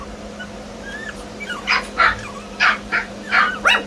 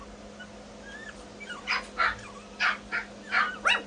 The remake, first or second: first